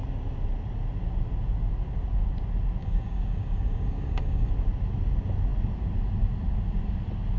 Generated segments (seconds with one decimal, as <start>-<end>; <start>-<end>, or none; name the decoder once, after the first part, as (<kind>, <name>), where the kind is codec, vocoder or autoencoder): 2.8-4.5 (codec, DAC)